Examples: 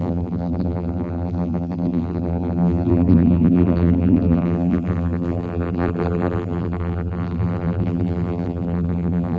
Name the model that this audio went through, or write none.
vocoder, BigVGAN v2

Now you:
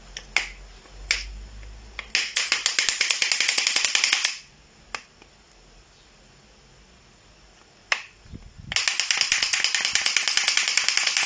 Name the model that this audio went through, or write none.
none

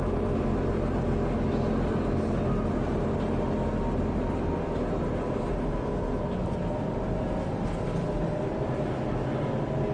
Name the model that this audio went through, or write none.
none